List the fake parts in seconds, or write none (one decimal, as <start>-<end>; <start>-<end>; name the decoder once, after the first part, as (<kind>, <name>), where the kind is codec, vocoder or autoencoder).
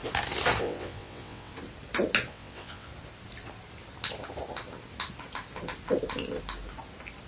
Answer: 0.6-1.5 (vocoder, WaveNeXt); 2.3-2.9